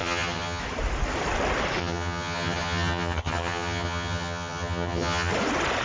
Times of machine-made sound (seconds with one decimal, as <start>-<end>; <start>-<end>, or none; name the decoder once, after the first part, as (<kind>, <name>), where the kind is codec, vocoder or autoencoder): 0.0-0.6 (vocoder, HiFi-GAN); 1.8-5.3